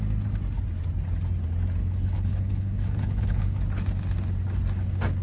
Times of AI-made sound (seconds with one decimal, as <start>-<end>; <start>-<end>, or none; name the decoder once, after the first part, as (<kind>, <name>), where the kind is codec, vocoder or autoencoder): 1.8-3.6 (codec, HILCodec)